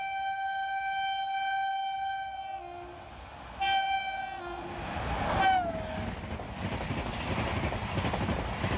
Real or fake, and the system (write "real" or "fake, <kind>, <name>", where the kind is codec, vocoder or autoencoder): real